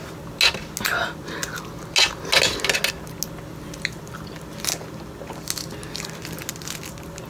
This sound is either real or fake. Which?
real